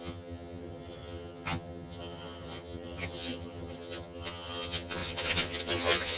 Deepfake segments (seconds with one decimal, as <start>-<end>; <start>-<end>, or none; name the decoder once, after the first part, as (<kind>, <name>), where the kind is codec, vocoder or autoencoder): 0.0-6.2 (vocoder, HiFi-GAN)